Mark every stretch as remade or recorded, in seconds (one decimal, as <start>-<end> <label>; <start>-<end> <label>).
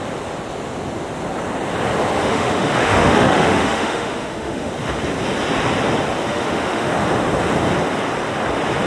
0.0-2.2 recorded; 2.2-4.7 remade; 4.7-6.3 recorded; 6.3-6.9 remade; 6.9-8.9 recorded